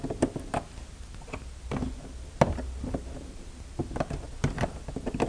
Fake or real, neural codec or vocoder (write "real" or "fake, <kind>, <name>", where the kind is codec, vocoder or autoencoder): real